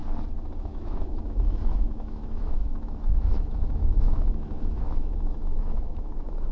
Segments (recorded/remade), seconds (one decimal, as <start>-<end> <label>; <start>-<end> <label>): 0.0-0.6 recorded; 0.6-6.5 remade